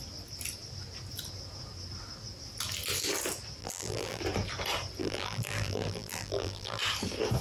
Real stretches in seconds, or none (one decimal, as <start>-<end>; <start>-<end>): 0.0-3.6; 4.2-5.0; 6.8-7.4